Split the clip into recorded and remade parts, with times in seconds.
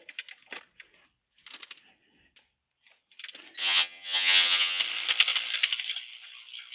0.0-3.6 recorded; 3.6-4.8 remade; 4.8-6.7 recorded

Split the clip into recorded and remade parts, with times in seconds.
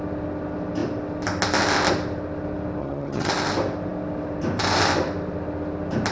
0.0-2.8 recorded; 2.8-3.3 remade; 3.3-6.1 recorded